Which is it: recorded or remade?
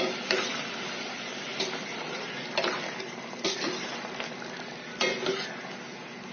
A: recorded